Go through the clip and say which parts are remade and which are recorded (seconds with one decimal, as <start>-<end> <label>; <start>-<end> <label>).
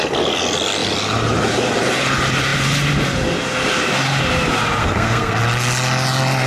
0.0-4.8 recorded; 4.8-5.4 remade; 5.4-6.5 recorded